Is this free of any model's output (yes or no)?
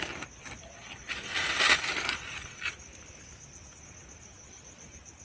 yes